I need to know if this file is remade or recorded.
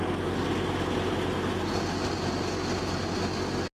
recorded